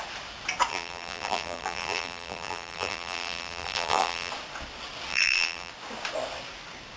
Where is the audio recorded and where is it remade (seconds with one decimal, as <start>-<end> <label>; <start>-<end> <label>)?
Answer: 0.0-0.7 recorded; 0.7-4.3 remade; 4.3-5.1 recorded; 5.1-5.7 remade; 5.7-7.0 recorded